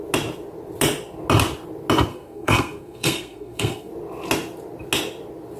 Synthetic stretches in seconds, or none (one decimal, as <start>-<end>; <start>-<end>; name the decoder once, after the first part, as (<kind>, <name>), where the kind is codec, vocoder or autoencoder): 2.1-3.9 (codec, SNAC)